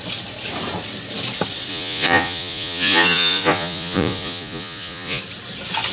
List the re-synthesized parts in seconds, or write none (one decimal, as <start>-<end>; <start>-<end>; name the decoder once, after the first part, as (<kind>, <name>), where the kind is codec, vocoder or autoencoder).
1.7-5.2 (vocoder, Vocos)